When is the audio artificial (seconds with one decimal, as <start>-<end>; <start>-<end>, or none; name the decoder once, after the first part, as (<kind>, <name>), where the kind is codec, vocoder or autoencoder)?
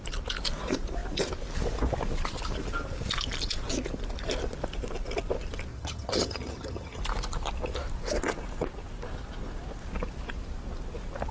5.7-7.0 (vocoder, HiFi-GAN)